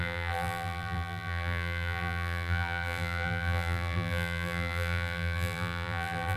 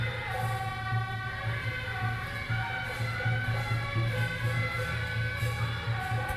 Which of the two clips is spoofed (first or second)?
first